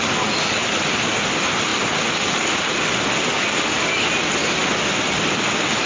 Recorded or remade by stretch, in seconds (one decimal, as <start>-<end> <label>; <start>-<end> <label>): 0.0-5.9 recorded